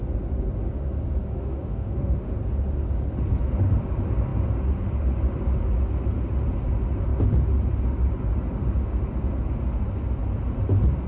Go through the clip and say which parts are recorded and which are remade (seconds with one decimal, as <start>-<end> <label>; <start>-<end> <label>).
0.0-1.3 recorded; 1.3-2.4 remade; 2.4-11.1 recorded

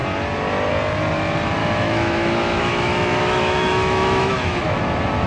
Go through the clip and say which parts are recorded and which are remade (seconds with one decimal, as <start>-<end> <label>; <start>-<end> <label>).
0.0-1.6 recorded; 1.6-4.8 remade; 4.8-5.3 recorded

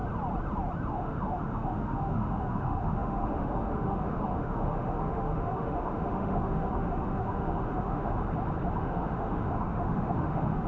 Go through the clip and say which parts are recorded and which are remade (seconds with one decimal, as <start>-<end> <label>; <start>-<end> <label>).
0.0-0.9 recorded; 0.9-8.2 remade; 8.2-8.8 recorded; 8.8-10.7 remade

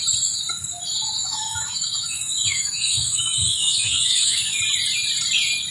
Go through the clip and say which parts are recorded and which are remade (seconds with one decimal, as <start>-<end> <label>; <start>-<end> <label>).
0.0-1.2 recorded; 1.2-4.6 remade; 4.6-5.7 recorded

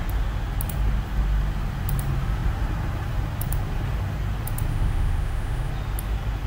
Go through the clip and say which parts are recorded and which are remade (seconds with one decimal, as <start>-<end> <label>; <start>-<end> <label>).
0.0-4.7 recorded; 4.7-5.7 remade; 5.7-6.5 recorded

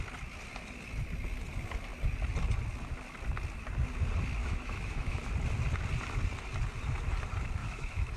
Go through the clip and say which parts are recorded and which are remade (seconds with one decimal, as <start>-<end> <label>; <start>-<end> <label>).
0.0-4.4 recorded; 4.4-5.3 remade; 5.3-7.6 recorded; 7.6-8.2 remade

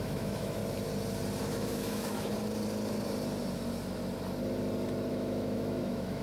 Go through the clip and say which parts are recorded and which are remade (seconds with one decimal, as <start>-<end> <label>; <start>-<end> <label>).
0.0-0.6 remade; 0.6-1.4 recorded; 1.4-2.3 remade; 2.3-5.1 recorded; 5.1-6.2 remade